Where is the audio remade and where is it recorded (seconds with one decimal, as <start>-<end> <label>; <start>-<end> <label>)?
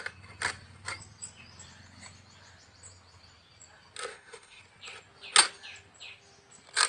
0.0-4.1 recorded; 4.1-4.6 remade; 4.6-6.9 recorded